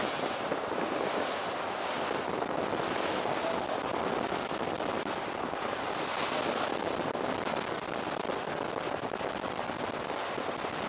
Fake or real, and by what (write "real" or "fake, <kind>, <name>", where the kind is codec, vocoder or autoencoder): real